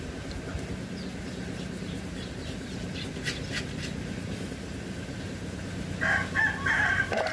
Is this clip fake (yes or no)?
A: no